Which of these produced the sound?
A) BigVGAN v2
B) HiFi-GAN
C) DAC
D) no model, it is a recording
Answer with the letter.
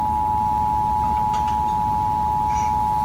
D